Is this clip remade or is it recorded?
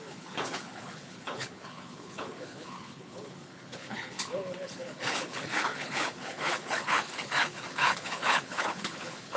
remade